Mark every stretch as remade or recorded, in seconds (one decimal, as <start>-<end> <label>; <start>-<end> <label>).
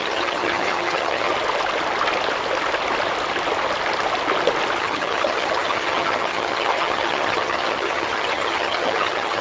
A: 0.0-1.3 remade; 1.3-4.8 recorded; 4.8-9.4 remade